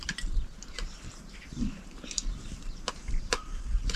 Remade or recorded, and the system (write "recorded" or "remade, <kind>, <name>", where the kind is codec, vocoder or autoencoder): remade, vocoder, BigVGAN v2